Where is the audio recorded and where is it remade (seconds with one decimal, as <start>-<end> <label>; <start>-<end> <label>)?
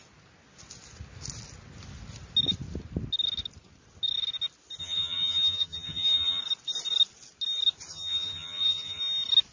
0.0-4.8 recorded; 4.8-6.4 remade; 6.4-7.9 recorded; 7.9-9.0 remade; 9.0-9.5 recorded